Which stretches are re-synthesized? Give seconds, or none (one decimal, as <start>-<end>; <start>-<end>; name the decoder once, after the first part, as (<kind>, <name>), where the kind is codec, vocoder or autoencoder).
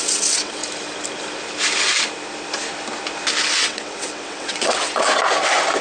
0.0-0.6 (vocoder, WaveNeXt); 3.6-5.1